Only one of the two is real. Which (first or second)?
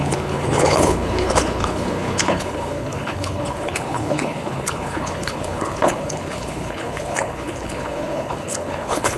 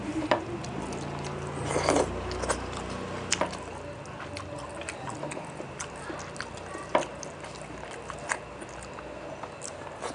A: second